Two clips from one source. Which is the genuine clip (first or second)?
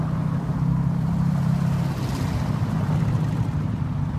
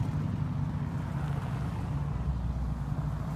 second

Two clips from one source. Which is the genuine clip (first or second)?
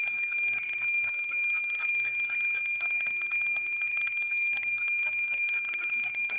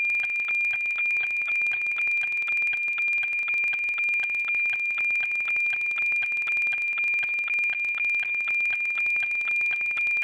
second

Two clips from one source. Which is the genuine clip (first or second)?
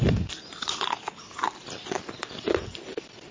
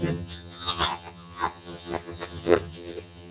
first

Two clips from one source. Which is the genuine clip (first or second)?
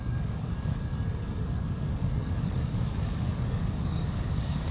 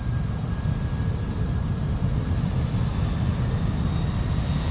second